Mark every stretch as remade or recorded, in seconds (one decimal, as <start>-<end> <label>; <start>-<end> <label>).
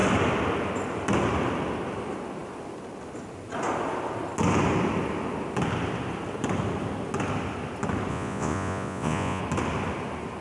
0.0-8.1 recorded; 8.1-9.4 remade; 9.4-10.4 recorded